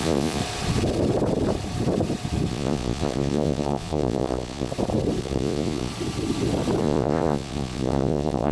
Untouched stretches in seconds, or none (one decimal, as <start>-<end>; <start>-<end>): 0.4-2.5; 4.7-5.2; 5.9-6.8